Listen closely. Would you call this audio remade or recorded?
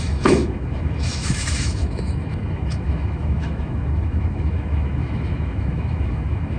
remade